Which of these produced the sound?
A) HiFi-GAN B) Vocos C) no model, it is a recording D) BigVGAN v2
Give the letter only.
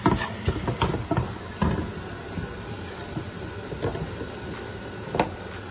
C